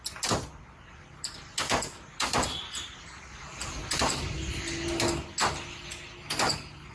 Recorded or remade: recorded